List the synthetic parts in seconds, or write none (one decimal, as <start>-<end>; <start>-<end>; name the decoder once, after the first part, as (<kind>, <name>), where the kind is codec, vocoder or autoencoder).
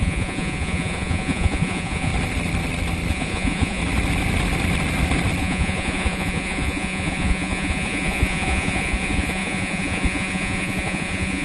0.0-2.1 (vocoder, Vocos); 3.1-3.8; 5.4-11.4